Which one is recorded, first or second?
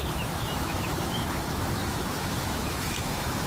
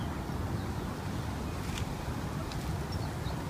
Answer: second